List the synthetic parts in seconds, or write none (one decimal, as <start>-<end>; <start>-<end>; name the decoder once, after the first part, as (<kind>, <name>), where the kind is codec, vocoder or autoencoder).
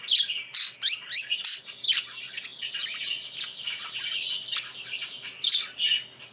none